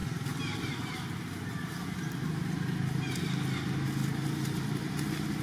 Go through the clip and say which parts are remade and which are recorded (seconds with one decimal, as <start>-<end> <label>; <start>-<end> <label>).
0.0-4.0 recorded; 4.0-4.9 remade; 4.9-5.4 recorded